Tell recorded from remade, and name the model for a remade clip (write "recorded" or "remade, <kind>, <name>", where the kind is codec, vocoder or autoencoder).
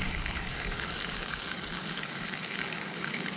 remade, codec, DAC